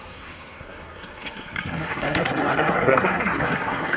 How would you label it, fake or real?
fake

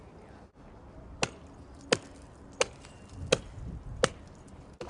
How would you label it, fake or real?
real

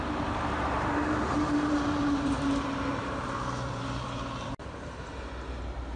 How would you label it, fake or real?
fake